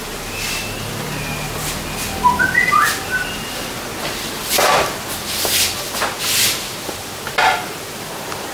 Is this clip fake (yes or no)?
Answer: no